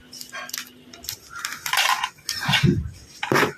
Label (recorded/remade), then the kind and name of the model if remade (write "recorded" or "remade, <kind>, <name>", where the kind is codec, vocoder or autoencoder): recorded